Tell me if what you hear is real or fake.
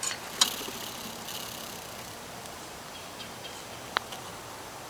fake